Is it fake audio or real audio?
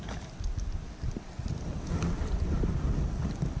real